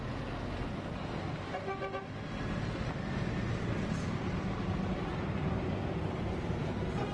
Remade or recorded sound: recorded